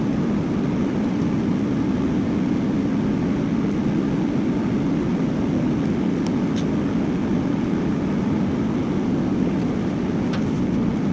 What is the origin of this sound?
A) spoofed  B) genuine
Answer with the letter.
B